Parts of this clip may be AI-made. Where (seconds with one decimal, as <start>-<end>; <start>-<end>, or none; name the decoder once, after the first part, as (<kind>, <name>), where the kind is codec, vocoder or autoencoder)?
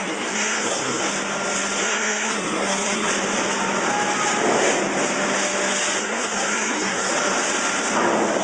0.0-1.0 (codec, SNAC); 1.8-3.1; 6.0-7.1